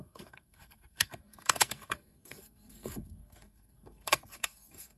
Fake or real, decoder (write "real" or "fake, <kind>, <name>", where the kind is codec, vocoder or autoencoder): fake, codec, SNAC